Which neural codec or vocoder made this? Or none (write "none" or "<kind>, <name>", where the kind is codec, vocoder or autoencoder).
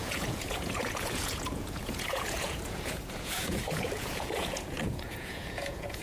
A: vocoder, Vocos